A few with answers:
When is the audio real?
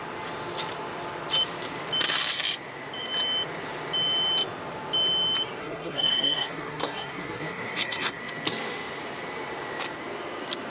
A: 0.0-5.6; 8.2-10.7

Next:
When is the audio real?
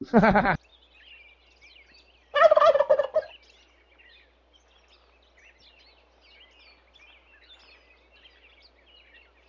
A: 0.0-9.5